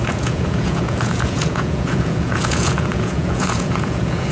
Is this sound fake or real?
fake